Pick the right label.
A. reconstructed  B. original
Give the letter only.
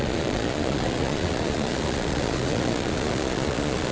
A